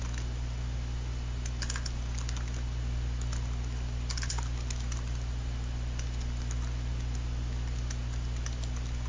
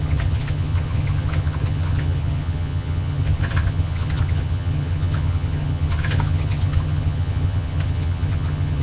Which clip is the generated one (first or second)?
second